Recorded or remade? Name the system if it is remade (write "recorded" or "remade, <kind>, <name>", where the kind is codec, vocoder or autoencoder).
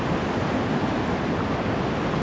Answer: recorded